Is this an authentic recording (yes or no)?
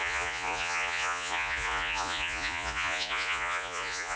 no